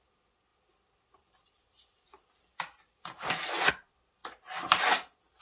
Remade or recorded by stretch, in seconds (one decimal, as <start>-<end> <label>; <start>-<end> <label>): 0.0-0.5 recorded; 0.5-3.7 remade; 3.7-4.2 recorded; 4.2-4.8 remade; 4.8-5.4 recorded